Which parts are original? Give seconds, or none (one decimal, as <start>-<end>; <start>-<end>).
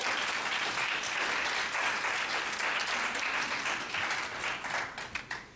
0.0-5.6